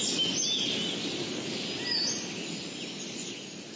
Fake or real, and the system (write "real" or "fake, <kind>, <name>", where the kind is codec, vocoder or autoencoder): real